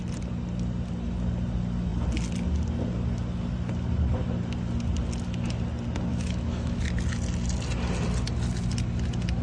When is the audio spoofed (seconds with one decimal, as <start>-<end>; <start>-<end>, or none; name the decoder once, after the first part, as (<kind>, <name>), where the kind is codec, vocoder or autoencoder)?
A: 6.1-6.8 (autoencoder, DAC-VAE)